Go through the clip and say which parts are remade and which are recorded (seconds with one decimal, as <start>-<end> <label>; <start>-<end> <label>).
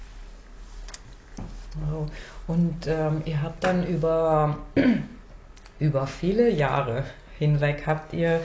0.0-8.4 recorded